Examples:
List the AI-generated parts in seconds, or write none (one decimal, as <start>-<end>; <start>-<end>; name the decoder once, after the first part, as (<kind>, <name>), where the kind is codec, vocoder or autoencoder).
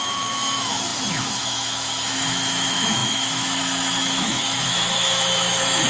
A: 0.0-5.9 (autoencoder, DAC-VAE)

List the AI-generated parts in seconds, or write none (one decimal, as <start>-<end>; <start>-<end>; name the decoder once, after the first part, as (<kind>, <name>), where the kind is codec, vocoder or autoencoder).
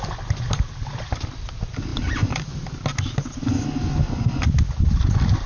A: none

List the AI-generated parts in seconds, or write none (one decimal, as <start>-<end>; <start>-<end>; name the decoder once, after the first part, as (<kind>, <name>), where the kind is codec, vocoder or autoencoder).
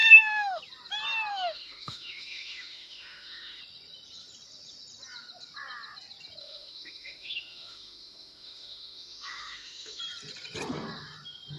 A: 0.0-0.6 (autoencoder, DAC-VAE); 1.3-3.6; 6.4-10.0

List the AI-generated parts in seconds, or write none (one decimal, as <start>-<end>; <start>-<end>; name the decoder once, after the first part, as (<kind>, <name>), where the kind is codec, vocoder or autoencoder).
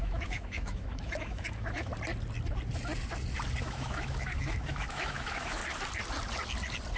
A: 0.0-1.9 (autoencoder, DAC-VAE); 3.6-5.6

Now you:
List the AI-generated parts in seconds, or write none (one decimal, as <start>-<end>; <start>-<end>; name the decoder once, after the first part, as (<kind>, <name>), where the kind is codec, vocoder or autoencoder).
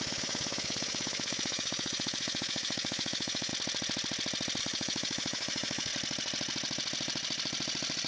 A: 0.0-3.5 (autoencoder, DAC-VAE); 4.6-5.9